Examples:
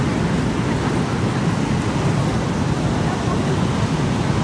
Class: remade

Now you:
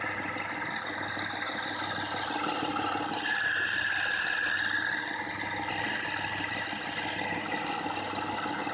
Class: recorded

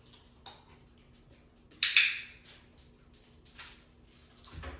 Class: recorded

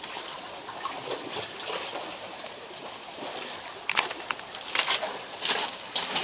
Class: remade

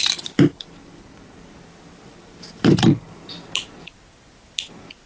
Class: recorded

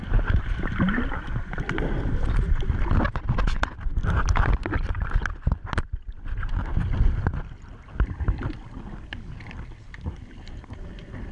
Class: recorded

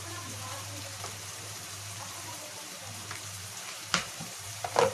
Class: remade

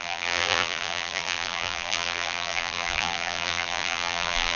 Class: remade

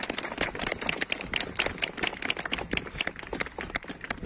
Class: remade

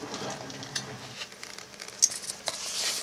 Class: recorded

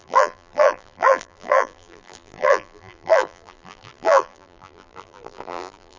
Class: remade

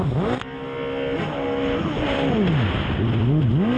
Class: recorded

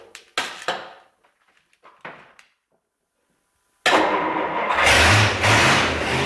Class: recorded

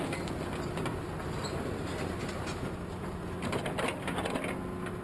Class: recorded